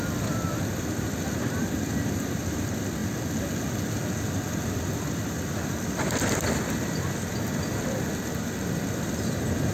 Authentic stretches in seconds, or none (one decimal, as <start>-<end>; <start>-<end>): 3.0-5.2